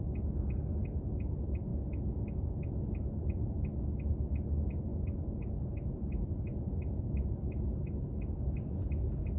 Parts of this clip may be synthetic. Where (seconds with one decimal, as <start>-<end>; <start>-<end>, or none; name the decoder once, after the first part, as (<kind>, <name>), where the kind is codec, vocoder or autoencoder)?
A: 1.7-2.7 (vocoder, Vocos); 4.9-9.4